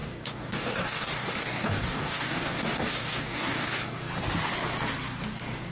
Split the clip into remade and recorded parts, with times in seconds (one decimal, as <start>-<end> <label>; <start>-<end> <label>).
0.0-4.0 remade; 4.0-5.7 recorded